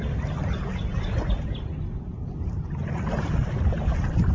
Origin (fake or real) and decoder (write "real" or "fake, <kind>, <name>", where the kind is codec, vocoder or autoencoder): real